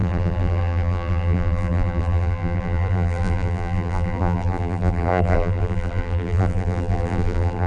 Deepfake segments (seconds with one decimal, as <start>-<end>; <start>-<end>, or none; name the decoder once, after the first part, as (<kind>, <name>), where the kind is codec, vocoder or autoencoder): 0.0-7.7 (vocoder, BigVGAN v2)